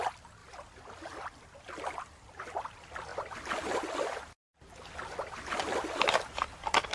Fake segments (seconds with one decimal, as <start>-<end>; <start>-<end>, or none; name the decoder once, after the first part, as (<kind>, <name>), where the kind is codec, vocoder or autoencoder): none